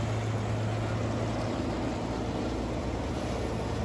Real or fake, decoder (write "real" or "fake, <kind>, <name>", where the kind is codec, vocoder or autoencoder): real